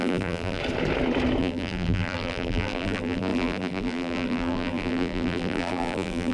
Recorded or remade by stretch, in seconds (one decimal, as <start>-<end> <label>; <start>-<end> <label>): 0.0-0.6 remade; 0.6-1.4 recorded; 1.4-6.3 remade